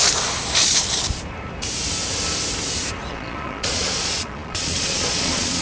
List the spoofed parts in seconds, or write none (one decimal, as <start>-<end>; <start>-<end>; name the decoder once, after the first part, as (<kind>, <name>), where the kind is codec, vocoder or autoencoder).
3.1-5.6 (vocoder, Vocos)